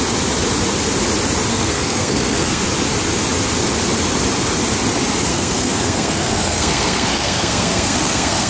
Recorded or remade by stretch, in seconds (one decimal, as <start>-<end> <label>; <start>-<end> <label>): 0.0-1.5 recorded; 1.5-2.6 remade; 2.6-5.3 recorded; 5.3-8.5 remade